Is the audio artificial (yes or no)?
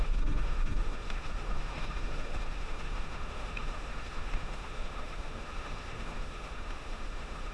yes